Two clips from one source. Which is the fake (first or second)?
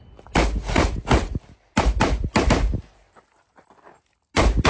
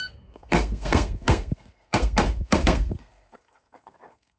second